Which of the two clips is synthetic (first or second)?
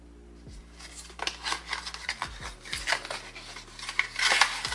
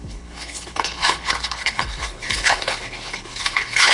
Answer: second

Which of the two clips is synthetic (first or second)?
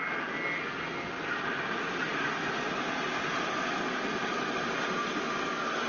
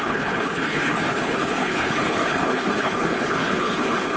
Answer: second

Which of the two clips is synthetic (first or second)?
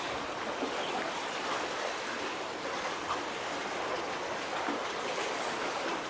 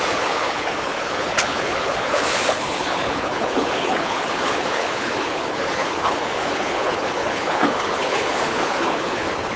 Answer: second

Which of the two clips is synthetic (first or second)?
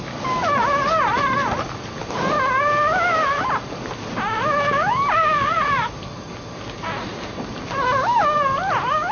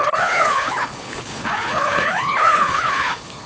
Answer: second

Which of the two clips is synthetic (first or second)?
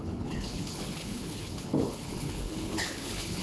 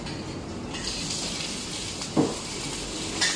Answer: first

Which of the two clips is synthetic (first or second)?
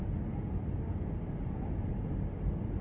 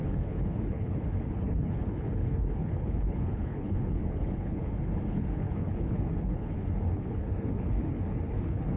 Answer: second